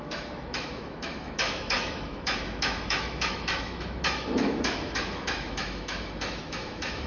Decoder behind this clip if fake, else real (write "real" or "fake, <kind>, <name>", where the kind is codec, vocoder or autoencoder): fake, autoencoder, DAC-VAE